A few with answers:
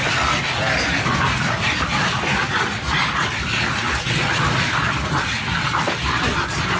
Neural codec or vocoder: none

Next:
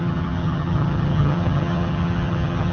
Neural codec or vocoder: vocoder, HiFi-GAN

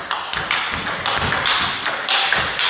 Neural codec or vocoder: none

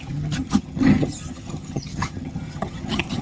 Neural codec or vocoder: vocoder, HiFi-GAN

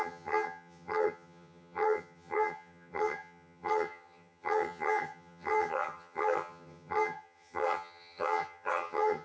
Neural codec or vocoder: vocoder, HiFi-GAN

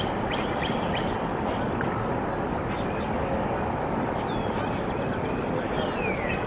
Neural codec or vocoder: none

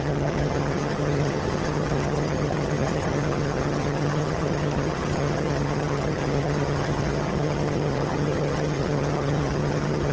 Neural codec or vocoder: vocoder, HiFi-GAN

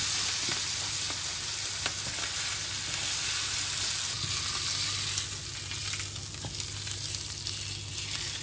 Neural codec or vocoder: none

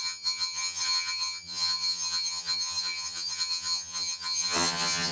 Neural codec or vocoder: vocoder, HiFi-GAN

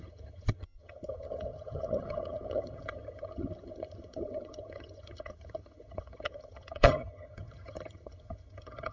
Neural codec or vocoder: vocoder, HiFi-GAN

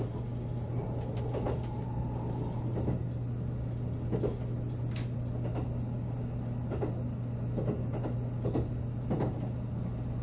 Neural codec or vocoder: none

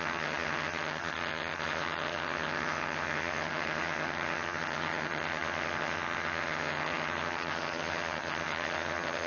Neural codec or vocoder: vocoder, HiFi-GAN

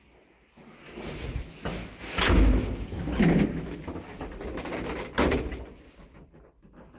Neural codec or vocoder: none